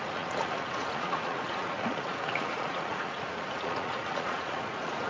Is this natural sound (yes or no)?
no